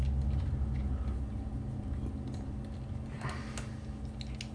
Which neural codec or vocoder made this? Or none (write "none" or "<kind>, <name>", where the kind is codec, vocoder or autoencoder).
none